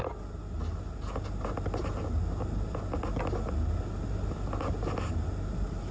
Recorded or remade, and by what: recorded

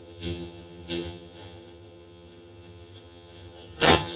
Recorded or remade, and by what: remade, vocoder, HiFi-GAN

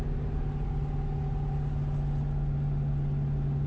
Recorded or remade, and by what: recorded